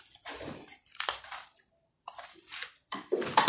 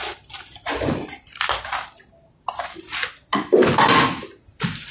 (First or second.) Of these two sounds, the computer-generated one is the first